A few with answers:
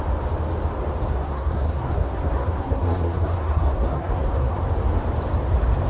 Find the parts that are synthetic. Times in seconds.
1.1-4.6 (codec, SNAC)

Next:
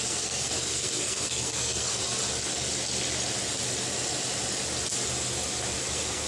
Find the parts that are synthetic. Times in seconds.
0.0-2.0 (codec, SNAC); 5.8-6.3

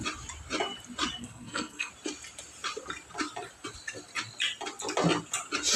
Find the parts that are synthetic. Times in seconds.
1.2-1.9 (codec, SNAC)